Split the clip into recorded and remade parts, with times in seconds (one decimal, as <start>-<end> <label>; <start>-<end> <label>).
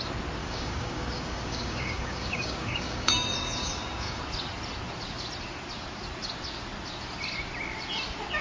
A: 0.0-0.4 recorded; 0.4-4.2 remade; 4.2-8.4 recorded